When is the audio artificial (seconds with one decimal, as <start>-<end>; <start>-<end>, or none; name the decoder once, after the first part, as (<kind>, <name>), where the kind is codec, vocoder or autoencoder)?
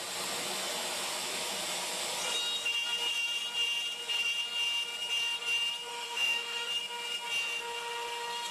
5.9-6.7 (autoencoder, DAC-VAE)